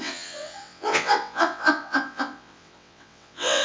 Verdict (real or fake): fake